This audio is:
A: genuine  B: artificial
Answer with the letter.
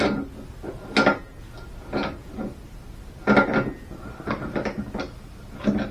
A